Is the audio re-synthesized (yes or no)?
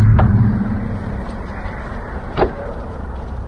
yes